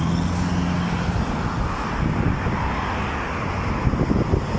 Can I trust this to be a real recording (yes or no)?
yes